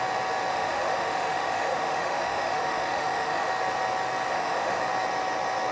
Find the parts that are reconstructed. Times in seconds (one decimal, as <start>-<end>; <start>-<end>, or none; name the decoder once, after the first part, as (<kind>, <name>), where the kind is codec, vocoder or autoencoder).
0.5-3.5 (autoencoder, DAC-VAE); 4.3-4.8